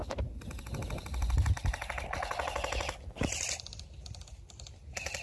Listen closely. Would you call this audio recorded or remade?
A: recorded